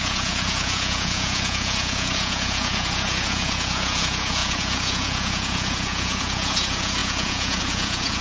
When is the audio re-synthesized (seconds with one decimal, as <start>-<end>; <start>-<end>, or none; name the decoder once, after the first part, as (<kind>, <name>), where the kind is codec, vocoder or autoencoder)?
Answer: 0.0-8.2 (vocoder, Vocos)